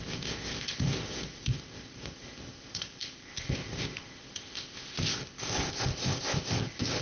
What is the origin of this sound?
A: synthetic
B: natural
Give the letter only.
A